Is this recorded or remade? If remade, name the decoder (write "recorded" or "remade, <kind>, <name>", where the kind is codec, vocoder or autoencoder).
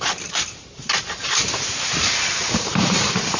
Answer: remade, vocoder, BigVGAN v2